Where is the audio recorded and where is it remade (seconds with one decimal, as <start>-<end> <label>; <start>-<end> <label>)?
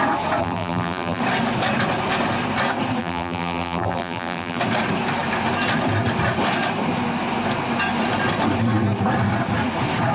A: 0.0-0.4 recorded; 0.4-1.2 remade; 1.2-3.0 recorded; 3.0-4.6 remade; 4.6-10.1 recorded